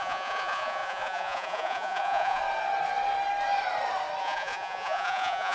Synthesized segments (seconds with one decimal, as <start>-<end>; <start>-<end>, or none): 0.0-2.4; 4.2-5.5